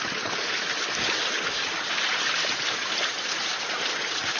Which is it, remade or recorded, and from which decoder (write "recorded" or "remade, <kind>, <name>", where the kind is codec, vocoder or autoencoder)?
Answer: recorded